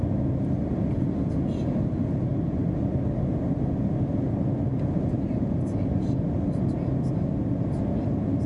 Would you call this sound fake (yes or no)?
no